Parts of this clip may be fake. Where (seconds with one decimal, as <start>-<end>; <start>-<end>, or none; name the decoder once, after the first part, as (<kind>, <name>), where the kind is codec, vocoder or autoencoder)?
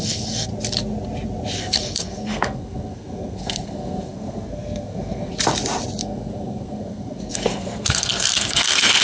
0.0-0.5 (codec, SNAC); 1.6-5.3; 6.0-9.0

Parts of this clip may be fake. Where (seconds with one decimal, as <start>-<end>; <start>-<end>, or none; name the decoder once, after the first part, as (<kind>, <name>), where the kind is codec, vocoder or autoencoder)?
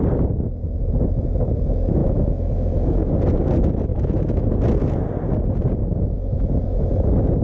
2.0-3.1 (autoencoder, DAC-VAE); 3.9-4.6; 5.8-6.9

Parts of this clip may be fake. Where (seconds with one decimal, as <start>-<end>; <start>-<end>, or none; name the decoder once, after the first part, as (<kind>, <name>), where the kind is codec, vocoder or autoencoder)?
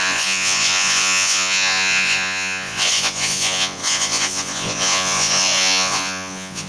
0.0-6.7 (vocoder, Vocos)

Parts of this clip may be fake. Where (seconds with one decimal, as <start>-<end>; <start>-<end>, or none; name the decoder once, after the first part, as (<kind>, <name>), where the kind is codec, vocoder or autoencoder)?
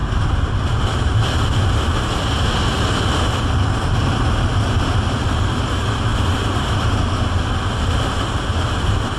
4.8-6.1 (vocoder, BigVGAN v2); 8.7-9.2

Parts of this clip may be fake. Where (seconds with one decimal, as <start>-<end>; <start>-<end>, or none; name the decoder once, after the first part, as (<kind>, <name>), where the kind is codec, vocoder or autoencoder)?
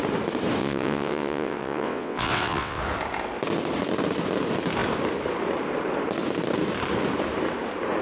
0.6-2.8 (vocoder, WaveNeXt)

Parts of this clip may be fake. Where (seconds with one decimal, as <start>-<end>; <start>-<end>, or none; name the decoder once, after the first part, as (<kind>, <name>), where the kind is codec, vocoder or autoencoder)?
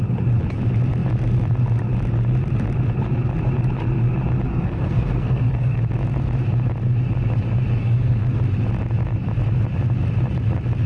4.5-5.8 (codec, SNAC); 7.8-8.4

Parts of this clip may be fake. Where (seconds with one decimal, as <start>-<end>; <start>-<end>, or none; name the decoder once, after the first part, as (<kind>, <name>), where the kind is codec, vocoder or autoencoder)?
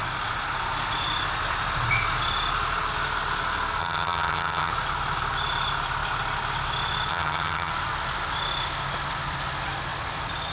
3.8-4.7 (vocoder, HiFi-GAN); 7.1-7.7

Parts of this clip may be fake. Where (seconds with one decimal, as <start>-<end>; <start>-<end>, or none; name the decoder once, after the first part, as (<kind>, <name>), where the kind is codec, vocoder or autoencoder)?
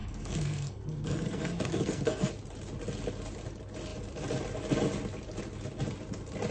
0.0-2.3 (codec, SNAC)